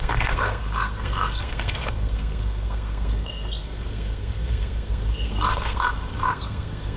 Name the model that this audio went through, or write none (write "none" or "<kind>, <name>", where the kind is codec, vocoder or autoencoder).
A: codec, SNAC